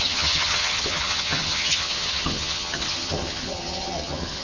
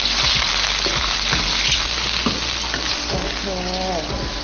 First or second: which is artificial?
first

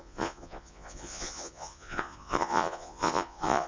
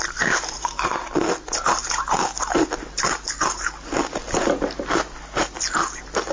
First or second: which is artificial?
first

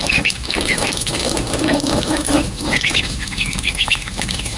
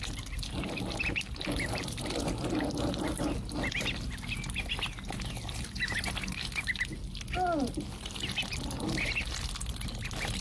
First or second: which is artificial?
first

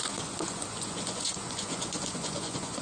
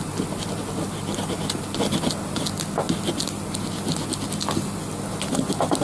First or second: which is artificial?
first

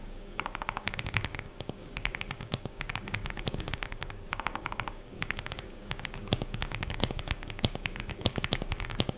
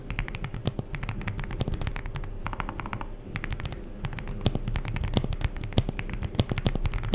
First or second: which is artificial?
first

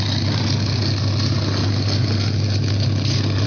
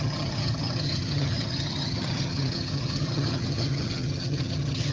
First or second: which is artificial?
second